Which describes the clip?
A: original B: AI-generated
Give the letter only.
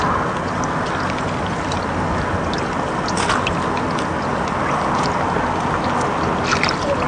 A